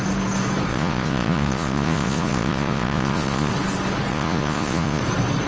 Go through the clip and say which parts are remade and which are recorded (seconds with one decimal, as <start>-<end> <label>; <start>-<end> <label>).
0.0-0.7 recorded; 0.7-3.5 remade; 3.5-4.1 recorded; 4.1-5.0 remade; 5.0-5.5 recorded